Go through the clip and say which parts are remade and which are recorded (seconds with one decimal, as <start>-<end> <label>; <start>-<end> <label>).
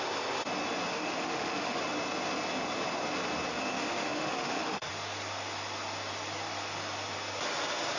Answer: 0.0-0.9 recorded; 0.9-1.8 remade; 1.8-3.5 recorded; 3.5-4.9 remade; 4.9-8.0 recorded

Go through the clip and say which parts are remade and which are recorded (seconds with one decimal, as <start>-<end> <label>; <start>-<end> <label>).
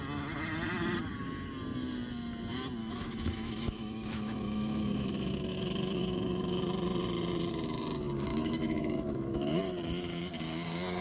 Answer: 0.0-2.8 recorded; 2.8-6.6 remade; 6.6-8.3 recorded; 8.3-9.6 remade; 9.6-11.0 recorded